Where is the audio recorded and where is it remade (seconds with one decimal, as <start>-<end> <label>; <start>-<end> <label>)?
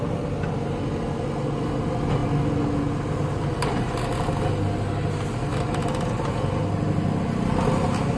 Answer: 0.0-8.2 recorded